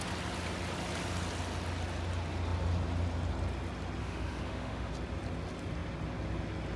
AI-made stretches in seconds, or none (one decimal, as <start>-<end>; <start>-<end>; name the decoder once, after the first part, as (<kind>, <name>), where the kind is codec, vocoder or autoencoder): 4.0-4.9 (autoencoder, DAC-VAE)